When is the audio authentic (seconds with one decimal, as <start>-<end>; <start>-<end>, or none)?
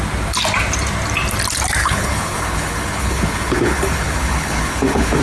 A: 0.0-1.8